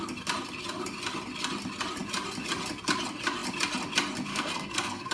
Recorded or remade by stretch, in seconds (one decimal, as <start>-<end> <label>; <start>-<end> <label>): 0.0-4.3 recorded; 4.3-5.1 remade